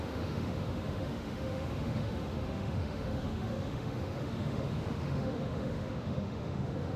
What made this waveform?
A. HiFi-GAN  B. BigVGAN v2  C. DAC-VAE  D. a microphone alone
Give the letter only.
C